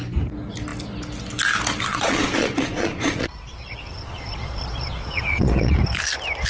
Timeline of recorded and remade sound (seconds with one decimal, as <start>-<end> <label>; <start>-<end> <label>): 0.0-1.9 recorded; 1.9-5.8 remade; 5.8-6.5 recorded